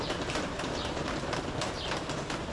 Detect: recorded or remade remade